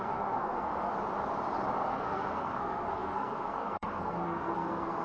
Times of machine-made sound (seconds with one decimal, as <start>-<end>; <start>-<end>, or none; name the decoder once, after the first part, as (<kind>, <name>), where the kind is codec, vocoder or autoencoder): 0.0-0.9 (codec, SNAC); 1.9-5.0